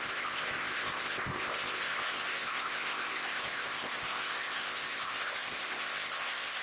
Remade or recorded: remade